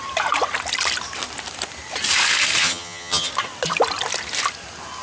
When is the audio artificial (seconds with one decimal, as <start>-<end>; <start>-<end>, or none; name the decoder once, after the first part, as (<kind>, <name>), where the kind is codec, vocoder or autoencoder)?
2.6-3.3 (vocoder, HiFi-GAN)